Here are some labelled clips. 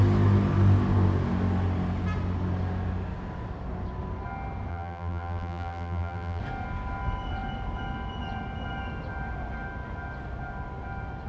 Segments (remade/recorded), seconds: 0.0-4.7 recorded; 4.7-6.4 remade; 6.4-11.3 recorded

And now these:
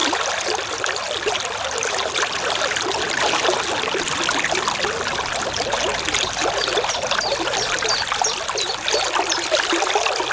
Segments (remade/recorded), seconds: 0.0-1.8 remade; 1.8-5.9 recorded; 5.9-9.9 remade; 9.9-10.3 recorded

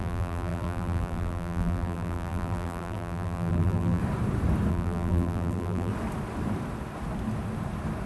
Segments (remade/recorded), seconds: 0.0-4.0 remade; 4.0-4.7 recorded; 4.7-5.9 remade; 5.9-8.1 recorded

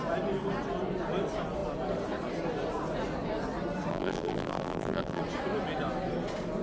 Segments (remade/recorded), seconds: 0.0-3.9 recorded; 3.9-5.2 remade; 5.2-6.6 recorded